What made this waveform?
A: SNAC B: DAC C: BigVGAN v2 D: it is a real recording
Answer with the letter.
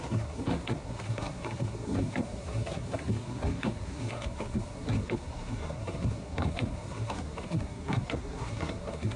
A